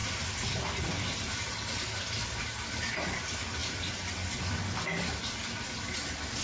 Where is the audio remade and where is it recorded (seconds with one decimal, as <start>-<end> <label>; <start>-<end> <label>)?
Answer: 0.0-6.4 recorded